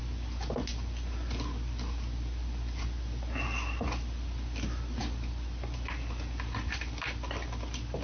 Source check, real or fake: real